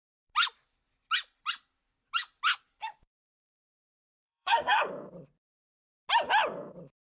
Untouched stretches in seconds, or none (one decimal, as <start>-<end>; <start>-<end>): 0.0-3.9; 4.9-7.1